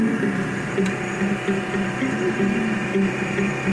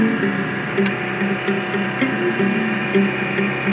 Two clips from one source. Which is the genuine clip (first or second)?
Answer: second